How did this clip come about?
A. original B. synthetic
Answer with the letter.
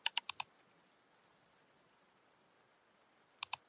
A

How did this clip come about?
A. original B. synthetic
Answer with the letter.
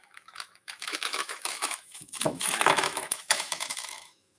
B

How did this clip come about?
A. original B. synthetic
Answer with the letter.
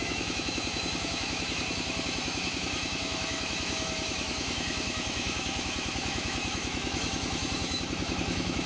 B